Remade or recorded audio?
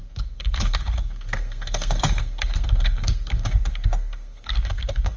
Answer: remade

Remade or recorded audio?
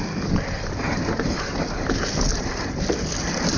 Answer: recorded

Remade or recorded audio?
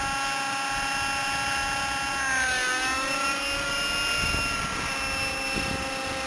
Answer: recorded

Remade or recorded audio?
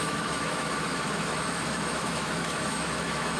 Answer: remade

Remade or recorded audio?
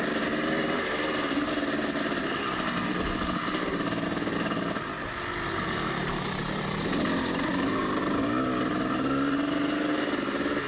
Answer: recorded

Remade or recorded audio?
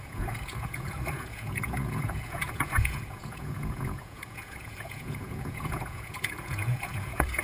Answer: remade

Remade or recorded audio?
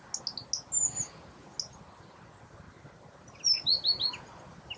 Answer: recorded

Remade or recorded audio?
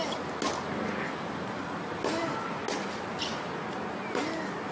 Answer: recorded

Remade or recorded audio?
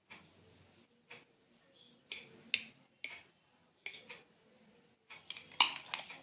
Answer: recorded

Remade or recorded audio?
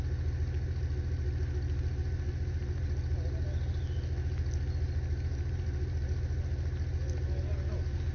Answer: recorded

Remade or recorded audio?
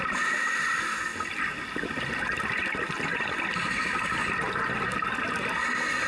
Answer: recorded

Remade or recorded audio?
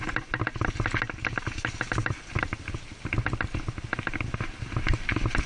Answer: recorded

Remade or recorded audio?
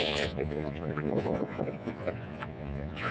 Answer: remade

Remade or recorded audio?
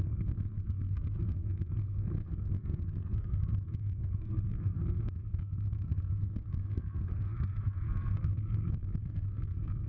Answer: remade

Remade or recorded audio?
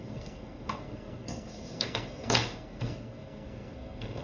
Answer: remade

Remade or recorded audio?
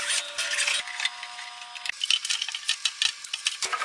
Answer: recorded